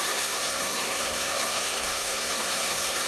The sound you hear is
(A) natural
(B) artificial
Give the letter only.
B